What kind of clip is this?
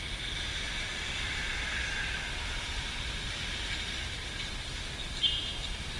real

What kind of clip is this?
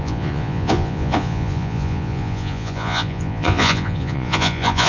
fake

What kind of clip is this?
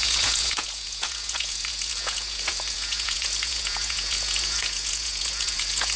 fake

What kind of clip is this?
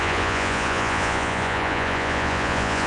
fake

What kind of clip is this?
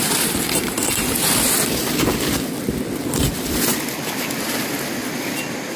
real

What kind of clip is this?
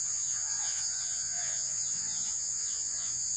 fake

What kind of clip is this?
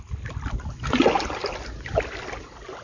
real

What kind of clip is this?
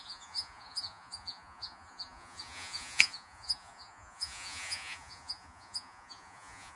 fake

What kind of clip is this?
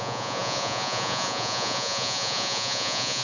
fake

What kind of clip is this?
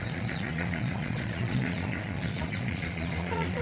fake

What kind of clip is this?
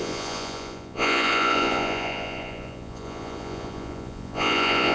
fake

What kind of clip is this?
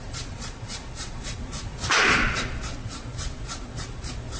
fake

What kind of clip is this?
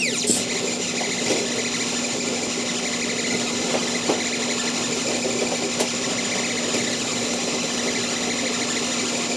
real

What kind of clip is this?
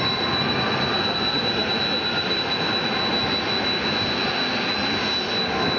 real